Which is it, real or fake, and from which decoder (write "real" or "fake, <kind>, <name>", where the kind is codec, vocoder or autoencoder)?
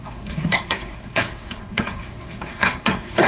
fake, codec, SNAC